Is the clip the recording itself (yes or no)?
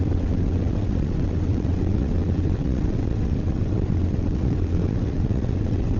no